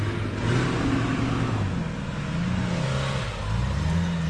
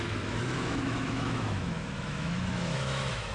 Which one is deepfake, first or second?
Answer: second